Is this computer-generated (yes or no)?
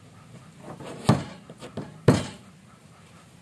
yes